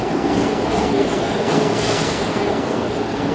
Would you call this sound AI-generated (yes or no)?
yes